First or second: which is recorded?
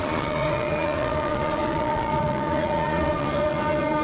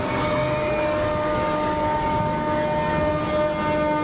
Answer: second